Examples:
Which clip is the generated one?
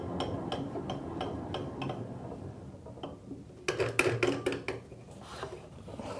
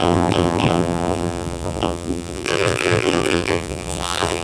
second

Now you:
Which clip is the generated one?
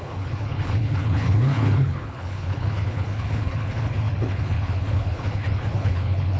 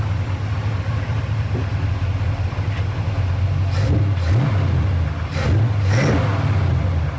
first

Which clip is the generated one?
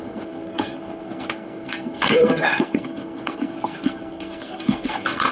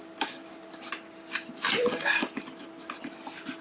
first